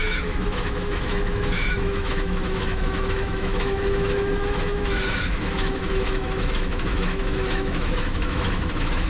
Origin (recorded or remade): remade